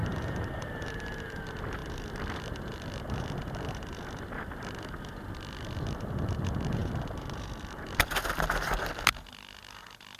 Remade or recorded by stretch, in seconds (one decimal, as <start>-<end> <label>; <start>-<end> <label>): 0.0-1.4 remade; 1.4-10.2 recorded